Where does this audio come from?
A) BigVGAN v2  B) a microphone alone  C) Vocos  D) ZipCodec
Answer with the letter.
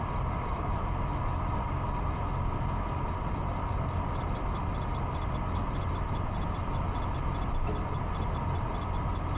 B